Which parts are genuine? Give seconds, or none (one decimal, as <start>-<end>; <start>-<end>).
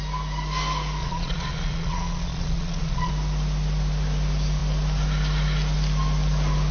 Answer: 0.0-1.0; 3.1-6.7